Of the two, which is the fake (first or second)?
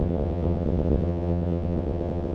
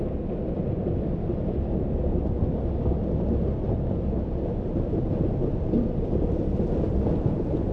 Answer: first